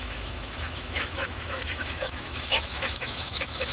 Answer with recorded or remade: remade